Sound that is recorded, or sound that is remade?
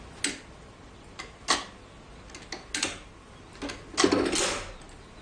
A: recorded